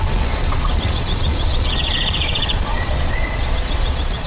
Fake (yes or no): yes